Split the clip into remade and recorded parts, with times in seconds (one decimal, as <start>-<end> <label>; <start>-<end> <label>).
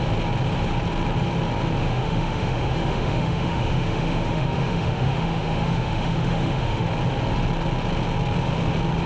0.0-1.8 recorded; 1.8-6.9 remade; 6.9-9.1 recorded